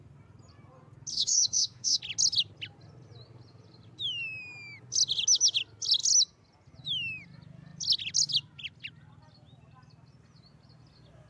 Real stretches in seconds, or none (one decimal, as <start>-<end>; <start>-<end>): 0.0-1.1; 2.0-11.3